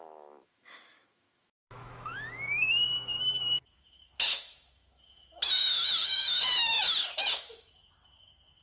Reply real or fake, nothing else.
fake